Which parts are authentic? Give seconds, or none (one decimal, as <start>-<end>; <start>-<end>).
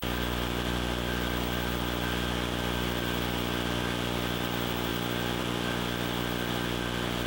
0.0-7.3